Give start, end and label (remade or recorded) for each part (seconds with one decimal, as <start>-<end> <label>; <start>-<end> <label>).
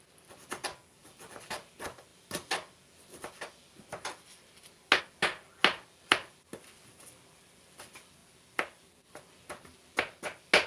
0.0-10.7 recorded